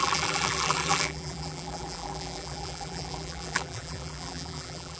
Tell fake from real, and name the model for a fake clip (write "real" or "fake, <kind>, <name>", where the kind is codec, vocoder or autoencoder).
fake, vocoder, BigVGAN v2